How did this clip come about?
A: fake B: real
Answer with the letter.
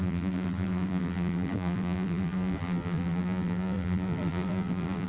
A